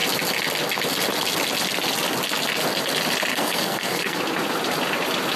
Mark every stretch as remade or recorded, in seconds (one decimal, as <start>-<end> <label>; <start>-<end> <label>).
0.0-3.3 recorded; 3.3-4.2 remade; 4.2-5.4 recorded